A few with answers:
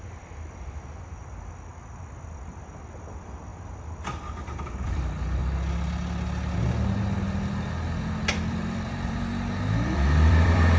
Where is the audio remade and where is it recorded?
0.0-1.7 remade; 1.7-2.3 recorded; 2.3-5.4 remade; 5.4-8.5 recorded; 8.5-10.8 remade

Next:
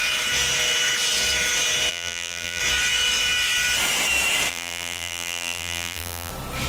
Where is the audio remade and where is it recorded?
0.0-1.9 recorded; 1.9-2.6 remade; 2.6-4.5 recorded; 4.5-6.3 remade; 6.3-6.7 recorded

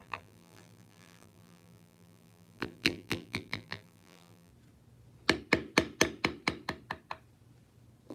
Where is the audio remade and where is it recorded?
0.0-4.5 remade; 4.5-8.1 recorded

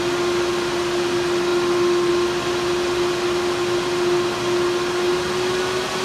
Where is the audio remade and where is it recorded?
0.0-6.0 recorded

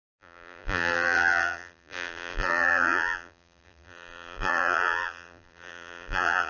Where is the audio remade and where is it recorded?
0.0-6.5 remade

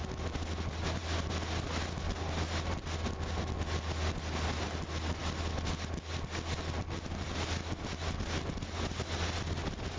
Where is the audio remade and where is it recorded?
0.0-10.0 recorded

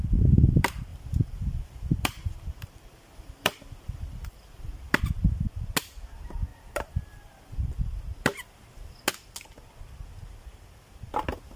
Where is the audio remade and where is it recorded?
0.0-0.9 recorded; 0.9-5.0 remade; 5.0-6.5 recorded; 6.5-7.3 remade; 7.3-11.6 recorded